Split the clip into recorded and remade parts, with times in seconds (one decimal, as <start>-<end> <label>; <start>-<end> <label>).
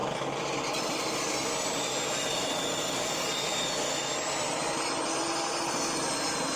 0.0-6.6 recorded